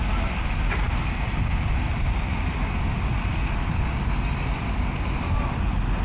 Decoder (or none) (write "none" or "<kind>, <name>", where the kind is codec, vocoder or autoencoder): none